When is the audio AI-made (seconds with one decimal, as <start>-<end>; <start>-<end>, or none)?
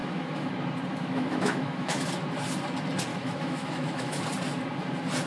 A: 0.0-0.5; 0.9-2.1; 3.1-4.2